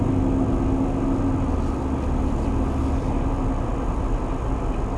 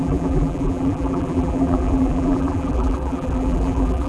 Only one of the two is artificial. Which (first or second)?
second